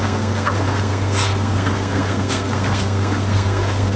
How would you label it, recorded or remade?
remade